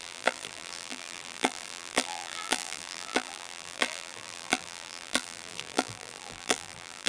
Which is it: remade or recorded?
remade